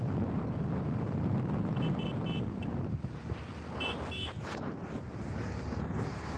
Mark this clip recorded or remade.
recorded